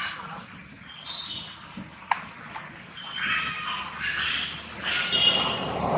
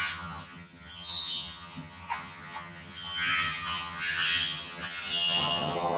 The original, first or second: first